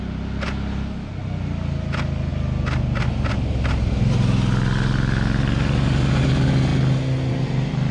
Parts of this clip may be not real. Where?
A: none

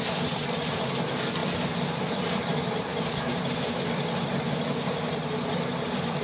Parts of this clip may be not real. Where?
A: 2.9-5.8 (vocoder, BigVGAN v2)

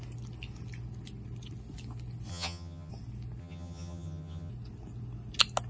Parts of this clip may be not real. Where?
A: 2.3-2.9 (vocoder, HiFi-GAN); 3.4-4.5

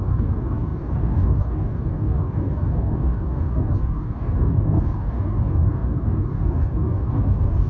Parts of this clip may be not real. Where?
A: 0.0-7.7 (codec, DAC)